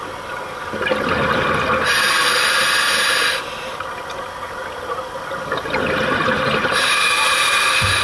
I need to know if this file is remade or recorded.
recorded